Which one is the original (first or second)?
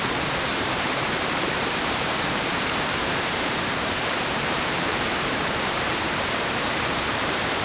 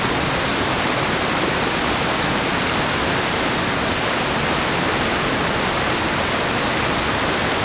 second